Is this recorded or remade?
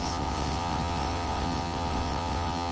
remade